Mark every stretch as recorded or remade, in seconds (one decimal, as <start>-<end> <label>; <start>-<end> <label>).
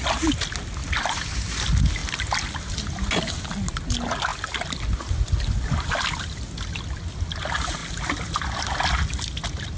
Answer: 0.0-0.8 recorded; 0.8-1.6 remade; 1.6-4.3 recorded; 4.3-5.9 remade; 5.9-9.8 recorded